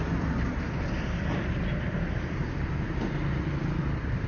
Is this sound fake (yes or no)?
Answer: yes